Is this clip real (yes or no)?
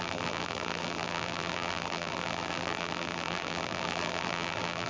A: no